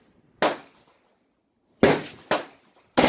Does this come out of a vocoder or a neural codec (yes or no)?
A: no